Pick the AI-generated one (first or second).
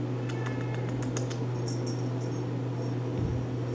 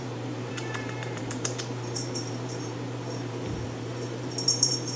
second